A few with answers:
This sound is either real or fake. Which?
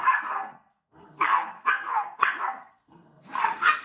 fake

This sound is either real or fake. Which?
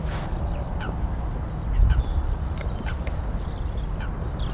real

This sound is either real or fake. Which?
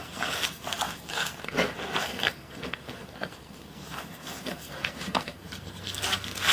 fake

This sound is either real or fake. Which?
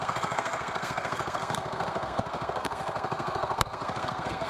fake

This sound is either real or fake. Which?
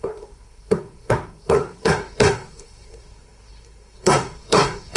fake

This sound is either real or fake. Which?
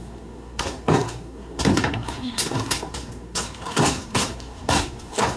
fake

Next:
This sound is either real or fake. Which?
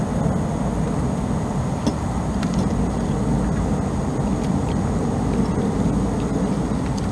real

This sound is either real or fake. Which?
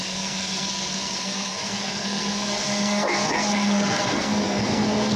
fake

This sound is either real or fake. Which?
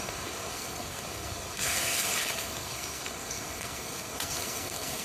fake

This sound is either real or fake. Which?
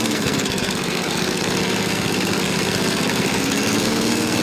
fake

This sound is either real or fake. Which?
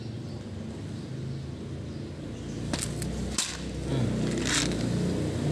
real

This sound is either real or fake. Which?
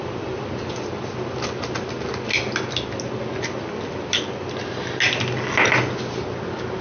real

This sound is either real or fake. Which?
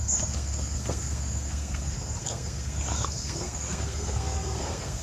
fake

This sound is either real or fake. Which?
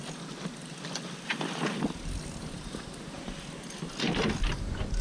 real